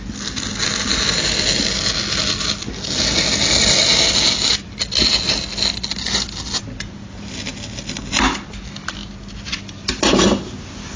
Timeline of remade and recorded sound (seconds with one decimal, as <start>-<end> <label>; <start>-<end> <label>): 0.0-11.0 recorded